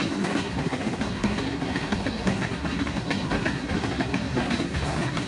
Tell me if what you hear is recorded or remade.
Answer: remade